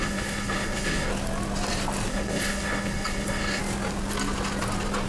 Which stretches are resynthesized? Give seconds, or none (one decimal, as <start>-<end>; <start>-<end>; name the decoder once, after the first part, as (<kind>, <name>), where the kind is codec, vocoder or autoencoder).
0.0-1.1 (codec, HILCodec); 2.1-3.6